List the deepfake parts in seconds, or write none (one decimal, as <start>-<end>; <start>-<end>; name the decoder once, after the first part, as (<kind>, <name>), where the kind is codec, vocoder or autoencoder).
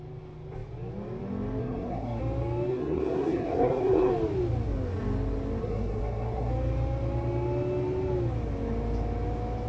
1.6-2.2 (codec, SNAC); 2.7-4.1; 5.6-6.5